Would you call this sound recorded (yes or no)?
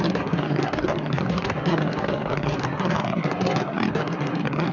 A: no